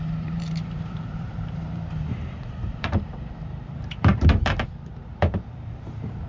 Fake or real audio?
fake